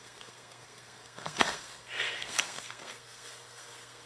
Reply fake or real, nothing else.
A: fake